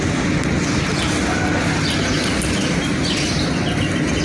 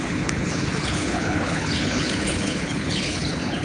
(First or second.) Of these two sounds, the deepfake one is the second